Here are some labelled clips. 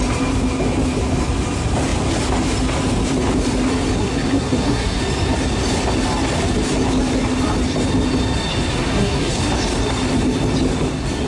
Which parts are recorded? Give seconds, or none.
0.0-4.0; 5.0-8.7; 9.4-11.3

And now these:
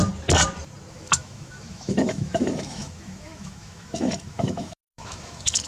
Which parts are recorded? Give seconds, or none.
0.0-0.9

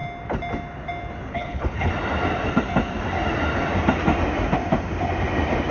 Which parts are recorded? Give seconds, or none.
0.0-1.3; 1.9-5.7